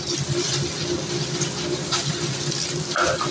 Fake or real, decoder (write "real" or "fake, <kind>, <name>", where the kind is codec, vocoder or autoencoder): real